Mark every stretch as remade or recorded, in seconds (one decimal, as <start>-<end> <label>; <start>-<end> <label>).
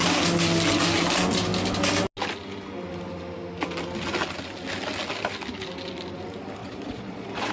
0.0-6.6 recorded; 6.6-7.5 remade